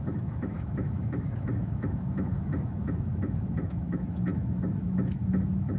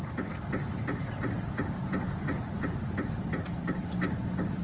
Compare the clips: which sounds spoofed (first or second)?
first